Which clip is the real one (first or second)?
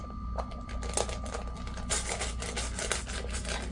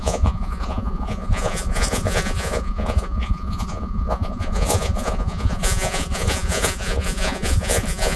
first